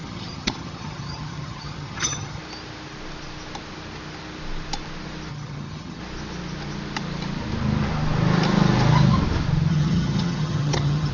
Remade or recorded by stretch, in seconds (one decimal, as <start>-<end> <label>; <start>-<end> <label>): 0.0-2.4 remade; 2.4-5.3 recorded; 5.3-6.0 remade; 6.0-9.7 recorded; 9.7-11.1 remade